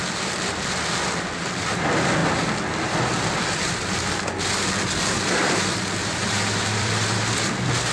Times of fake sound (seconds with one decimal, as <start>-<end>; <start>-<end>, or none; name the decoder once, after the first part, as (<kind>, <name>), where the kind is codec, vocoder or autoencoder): 2.2-6.9 (vocoder, BigVGAN v2)